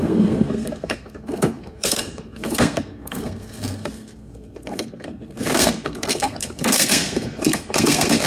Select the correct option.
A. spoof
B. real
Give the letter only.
A